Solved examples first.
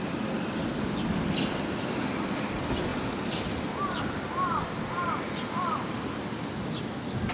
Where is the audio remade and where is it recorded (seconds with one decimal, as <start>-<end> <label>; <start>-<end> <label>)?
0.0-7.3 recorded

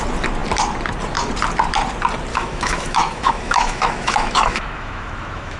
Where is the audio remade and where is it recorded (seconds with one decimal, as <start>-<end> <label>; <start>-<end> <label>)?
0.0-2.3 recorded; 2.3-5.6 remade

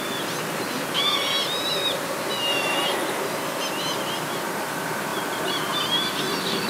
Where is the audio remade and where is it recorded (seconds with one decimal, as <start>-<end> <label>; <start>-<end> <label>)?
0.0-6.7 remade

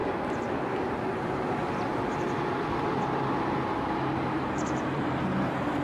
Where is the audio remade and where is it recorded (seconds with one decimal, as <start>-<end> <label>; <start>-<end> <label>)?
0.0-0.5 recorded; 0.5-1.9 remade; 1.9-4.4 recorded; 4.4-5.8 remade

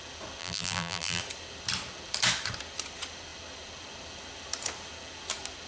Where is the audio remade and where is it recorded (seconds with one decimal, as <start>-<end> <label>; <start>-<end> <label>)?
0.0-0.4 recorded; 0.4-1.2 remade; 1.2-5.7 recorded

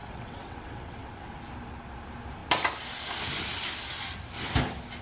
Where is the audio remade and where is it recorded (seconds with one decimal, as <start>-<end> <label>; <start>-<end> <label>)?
0.0-1.4 remade; 1.4-5.0 recorded